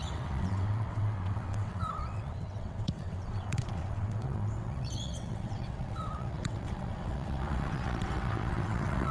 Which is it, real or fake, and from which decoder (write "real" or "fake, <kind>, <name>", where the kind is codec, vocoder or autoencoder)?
fake, vocoder, WaveNeXt